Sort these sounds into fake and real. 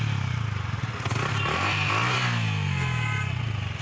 real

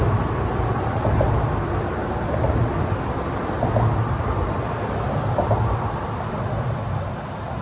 real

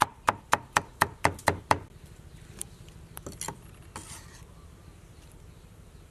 fake